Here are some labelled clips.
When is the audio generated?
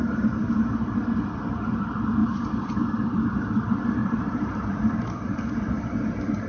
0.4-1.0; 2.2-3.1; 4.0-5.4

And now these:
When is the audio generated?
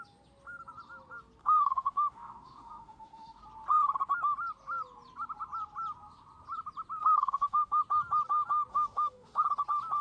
1.4-3.4; 7.0-7.8; 8.7-9.4